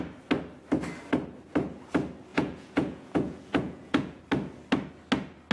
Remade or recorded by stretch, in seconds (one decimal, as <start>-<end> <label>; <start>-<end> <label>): 0.0-2.3 recorded; 2.3-4.2 remade; 4.2-5.5 recorded